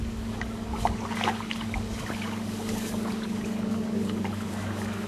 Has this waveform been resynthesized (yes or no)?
yes